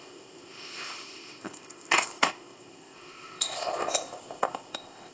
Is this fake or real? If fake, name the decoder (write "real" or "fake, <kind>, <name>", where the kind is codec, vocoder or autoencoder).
fake, codec, ZipCodec